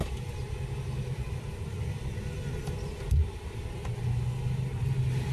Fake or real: real